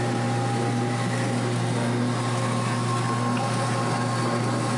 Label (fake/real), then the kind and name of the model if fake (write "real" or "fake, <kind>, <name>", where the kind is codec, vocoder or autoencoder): real